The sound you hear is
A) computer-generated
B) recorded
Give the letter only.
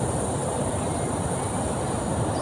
B